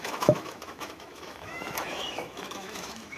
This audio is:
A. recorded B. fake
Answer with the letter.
B